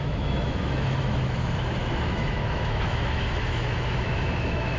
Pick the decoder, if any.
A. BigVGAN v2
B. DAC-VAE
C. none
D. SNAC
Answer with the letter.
B